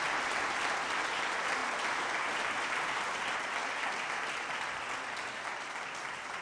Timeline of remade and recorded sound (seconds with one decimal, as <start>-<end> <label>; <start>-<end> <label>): 0.0-6.4 recorded